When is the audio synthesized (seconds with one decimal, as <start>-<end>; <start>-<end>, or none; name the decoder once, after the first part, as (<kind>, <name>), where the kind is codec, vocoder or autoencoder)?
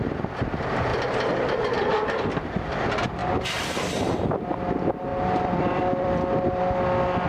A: 0.9-2.3 (vocoder, BigVGAN v2); 3.2-4.0; 5.1-6.6